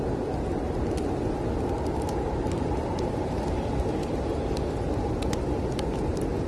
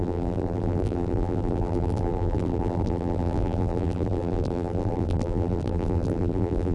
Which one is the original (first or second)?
first